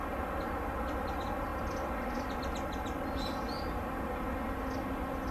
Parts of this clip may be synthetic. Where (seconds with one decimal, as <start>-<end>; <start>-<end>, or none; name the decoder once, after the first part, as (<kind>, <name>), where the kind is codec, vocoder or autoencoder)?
none